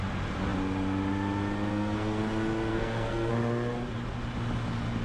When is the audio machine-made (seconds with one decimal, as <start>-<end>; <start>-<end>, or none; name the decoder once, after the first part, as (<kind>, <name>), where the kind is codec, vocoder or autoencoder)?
1.7-2.2 (codec, SNAC); 2.7-3.3